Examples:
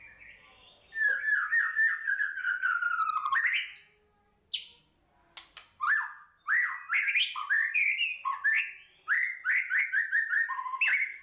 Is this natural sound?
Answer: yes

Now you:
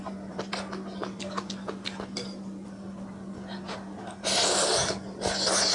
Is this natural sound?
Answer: yes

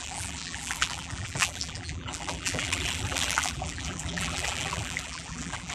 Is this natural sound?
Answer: no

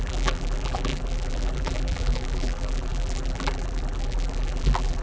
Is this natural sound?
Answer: no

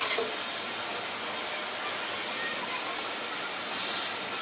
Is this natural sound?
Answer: yes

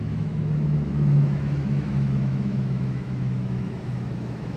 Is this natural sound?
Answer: no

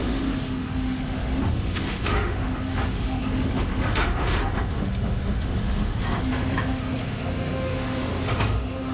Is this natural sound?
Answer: no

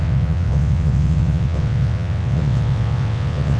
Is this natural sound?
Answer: no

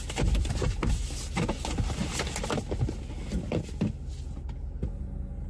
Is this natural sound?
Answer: yes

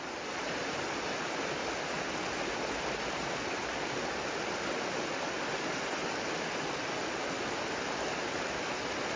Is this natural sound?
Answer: yes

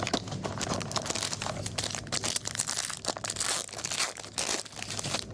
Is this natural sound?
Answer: yes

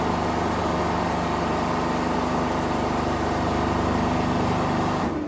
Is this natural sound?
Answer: yes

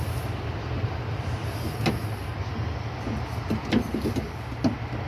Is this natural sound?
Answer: yes